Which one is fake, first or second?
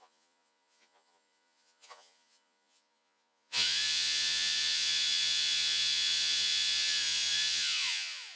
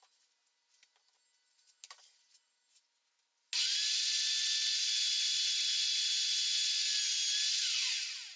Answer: first